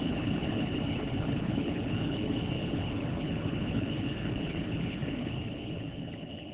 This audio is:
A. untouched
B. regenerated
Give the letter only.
B